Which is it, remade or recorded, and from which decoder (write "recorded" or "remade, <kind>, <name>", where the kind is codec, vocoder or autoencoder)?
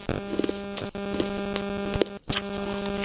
recorded